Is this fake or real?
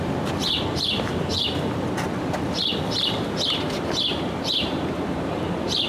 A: fake